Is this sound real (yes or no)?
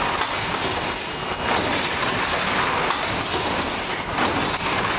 yes